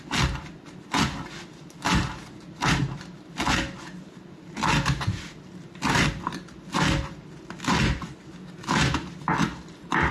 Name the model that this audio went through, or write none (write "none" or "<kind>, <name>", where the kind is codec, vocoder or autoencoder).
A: none